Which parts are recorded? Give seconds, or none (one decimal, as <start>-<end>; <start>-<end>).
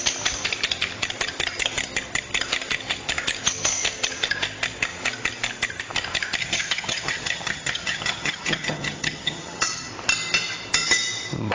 0.0-6.4; 9.9-11.5